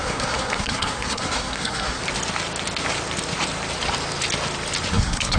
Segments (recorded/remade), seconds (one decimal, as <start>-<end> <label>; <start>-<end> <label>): 0.0-2.0 remade; 2.0-4.9 recorded; 4.9-5.4 remade